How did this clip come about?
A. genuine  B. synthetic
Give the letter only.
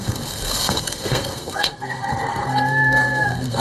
B